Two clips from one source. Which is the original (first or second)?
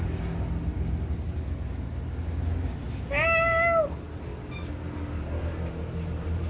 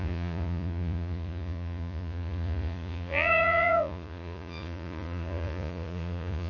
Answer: first